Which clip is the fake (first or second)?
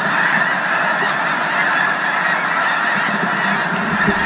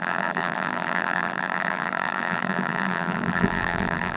second